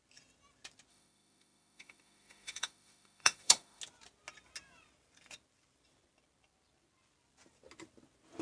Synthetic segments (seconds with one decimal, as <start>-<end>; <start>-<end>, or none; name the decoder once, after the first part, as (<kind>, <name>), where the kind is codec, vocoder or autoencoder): 0.9-3.8 (autoencoder, DAC-VAE)